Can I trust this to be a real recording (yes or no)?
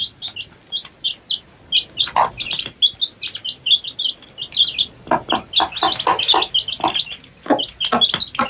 yes